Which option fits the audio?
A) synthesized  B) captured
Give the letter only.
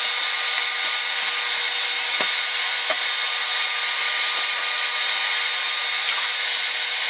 B